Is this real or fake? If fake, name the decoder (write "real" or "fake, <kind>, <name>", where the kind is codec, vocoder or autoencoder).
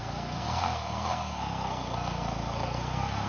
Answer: fake, codec, SNAC